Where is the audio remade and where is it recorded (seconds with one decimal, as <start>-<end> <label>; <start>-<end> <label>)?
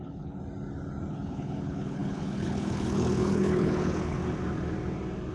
0.0-0.4 remade; 0.4-1.1 recorded; 1.1-4.2 remade; 4.2-5.3 recorded